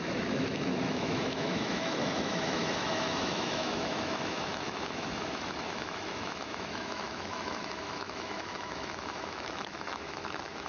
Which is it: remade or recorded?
remade